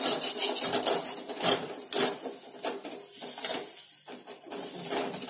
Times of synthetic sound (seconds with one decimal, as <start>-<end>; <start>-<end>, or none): none